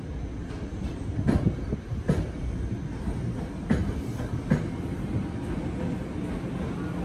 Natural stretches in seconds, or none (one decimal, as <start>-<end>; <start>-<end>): 0.0-7.0